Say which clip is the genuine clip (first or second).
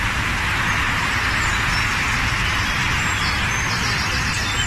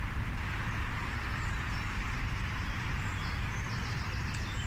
first